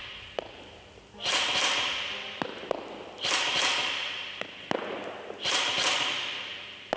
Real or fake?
real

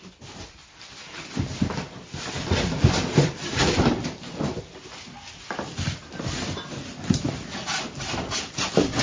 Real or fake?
fake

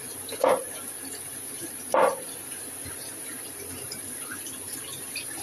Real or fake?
fake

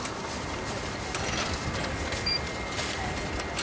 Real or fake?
fake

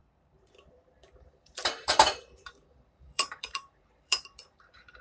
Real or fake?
fake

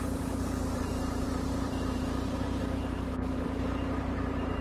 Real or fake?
fake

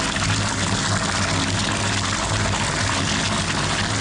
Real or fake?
real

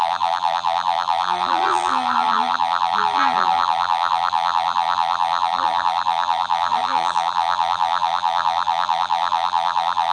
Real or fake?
fake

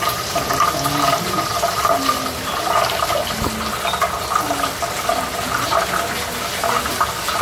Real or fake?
real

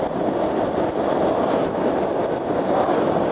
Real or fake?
real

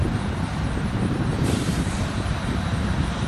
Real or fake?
fake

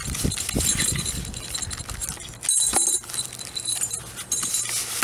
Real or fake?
real